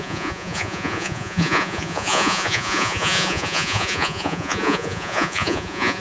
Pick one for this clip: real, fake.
fake